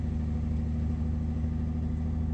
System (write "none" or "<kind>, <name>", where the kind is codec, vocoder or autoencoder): none